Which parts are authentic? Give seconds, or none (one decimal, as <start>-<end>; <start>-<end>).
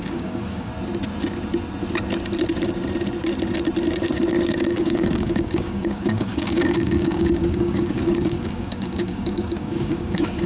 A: 0.7-4.5